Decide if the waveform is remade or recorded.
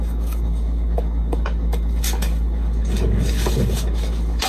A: remade